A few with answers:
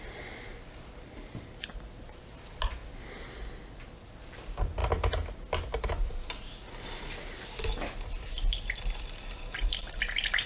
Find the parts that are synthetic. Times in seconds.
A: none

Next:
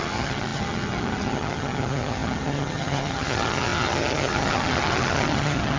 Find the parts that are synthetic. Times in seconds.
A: 0.0-5.8

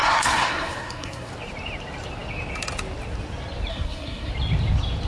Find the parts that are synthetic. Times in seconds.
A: 0.0-1.3; 3.7-4.3

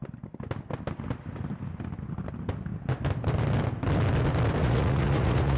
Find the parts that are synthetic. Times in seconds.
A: 4.6-5.6

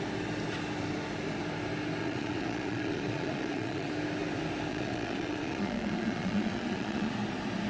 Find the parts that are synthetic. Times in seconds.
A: 2.0-3.9; 4.7-7.1